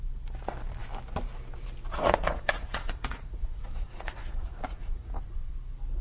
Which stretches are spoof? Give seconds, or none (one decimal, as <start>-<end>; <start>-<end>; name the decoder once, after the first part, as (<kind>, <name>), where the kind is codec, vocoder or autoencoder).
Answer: 1.9-5.5 (vocoder, Vocos)